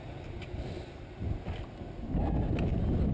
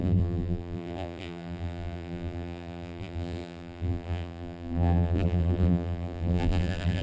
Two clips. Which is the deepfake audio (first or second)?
second